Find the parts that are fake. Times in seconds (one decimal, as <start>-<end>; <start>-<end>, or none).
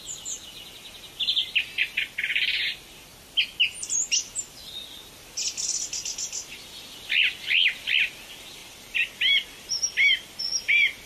8.6-9.1